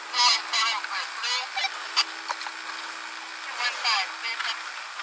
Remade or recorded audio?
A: recorded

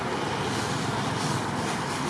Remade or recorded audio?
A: recorded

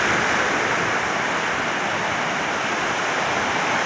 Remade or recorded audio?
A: recorded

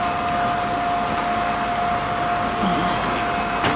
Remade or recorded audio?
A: recorded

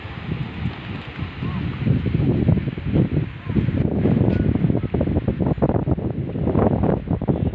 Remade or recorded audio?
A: recorded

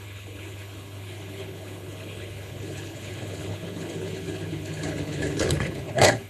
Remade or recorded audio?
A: remade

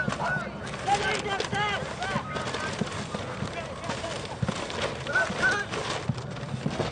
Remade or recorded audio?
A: recorded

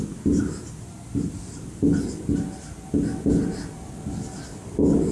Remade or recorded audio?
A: recorded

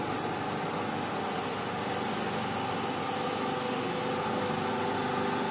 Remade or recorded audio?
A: recorded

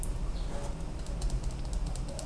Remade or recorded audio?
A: recorded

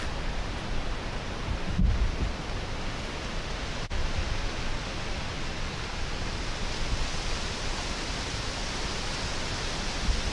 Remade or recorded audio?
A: recorded